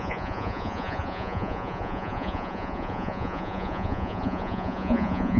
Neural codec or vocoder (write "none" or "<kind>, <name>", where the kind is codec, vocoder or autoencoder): vocoder, Vocos